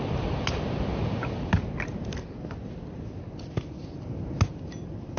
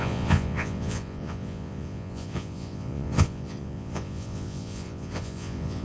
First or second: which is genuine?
first